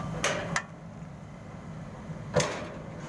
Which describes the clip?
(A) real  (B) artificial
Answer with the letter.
A